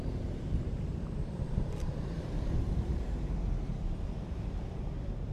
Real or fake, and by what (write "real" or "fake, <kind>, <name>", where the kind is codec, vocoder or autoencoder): fake, vocoder, BigVGAN v2